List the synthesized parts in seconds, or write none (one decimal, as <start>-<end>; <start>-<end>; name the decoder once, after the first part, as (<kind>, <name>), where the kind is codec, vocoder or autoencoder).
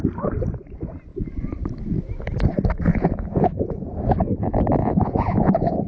2.9-3.8 (vocoder, Vocos); 4.8-5.9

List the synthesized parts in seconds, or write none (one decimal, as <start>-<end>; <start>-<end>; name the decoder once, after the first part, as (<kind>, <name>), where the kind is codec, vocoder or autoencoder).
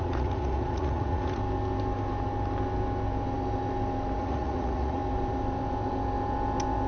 0.0-1.4 (vocoder, Vocos); 4.2-5.0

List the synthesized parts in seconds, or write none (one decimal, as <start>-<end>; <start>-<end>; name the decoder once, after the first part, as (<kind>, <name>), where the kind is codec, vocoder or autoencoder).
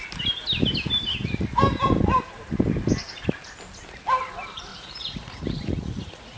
4.7-6.4 (vocoder, Vocos)